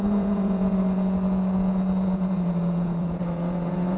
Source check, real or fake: fake